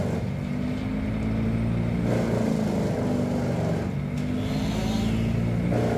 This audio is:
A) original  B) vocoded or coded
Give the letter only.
A